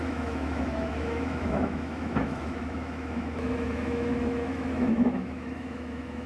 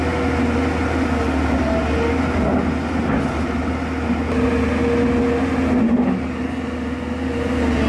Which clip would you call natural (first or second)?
second